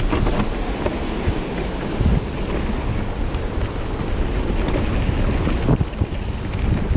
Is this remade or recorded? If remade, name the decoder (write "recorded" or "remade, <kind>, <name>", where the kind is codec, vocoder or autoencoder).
recorded